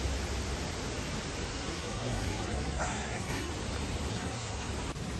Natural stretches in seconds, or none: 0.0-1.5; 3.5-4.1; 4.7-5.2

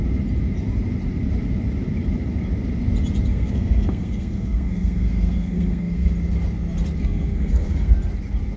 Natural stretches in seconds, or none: 0.0-3.3; 6.1-7.0; 7.9-8.6

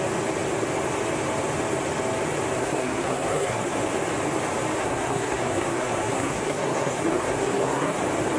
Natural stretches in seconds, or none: 0.0-2.6; 3.8-4.8; 8.0-8.4

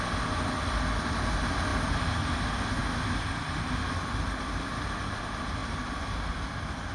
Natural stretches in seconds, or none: 0.0-6.9

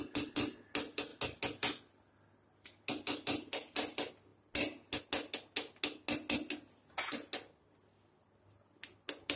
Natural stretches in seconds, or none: 0.0-9.4

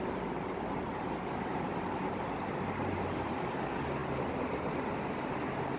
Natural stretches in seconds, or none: 0.0-5.8

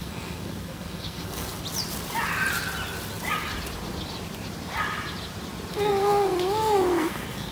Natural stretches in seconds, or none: 1.5-5.7